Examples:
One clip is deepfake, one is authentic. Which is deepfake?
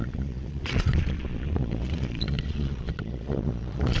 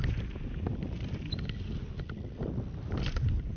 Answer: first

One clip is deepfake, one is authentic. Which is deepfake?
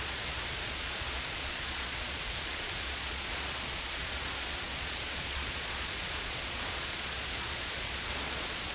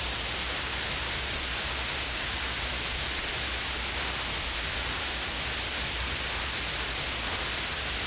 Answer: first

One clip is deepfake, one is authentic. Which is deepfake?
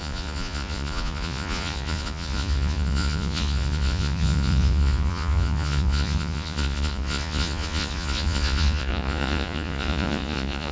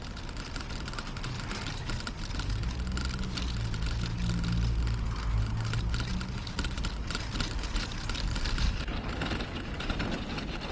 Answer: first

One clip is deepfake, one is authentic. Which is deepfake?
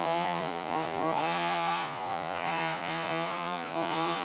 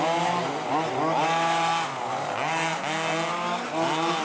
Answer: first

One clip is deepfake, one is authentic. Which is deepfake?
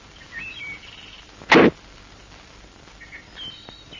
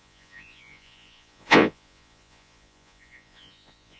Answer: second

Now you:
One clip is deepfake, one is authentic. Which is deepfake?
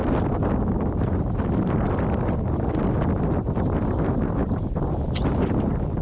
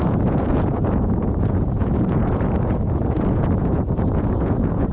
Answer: second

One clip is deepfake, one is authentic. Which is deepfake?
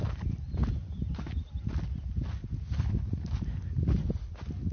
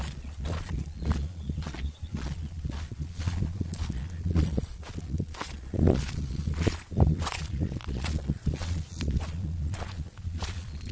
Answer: second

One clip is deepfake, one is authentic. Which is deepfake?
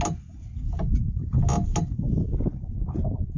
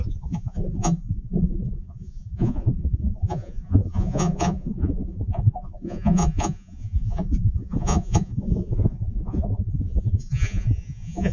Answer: second